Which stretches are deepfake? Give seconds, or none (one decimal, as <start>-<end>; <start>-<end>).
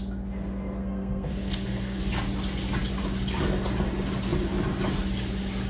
0.8-2.0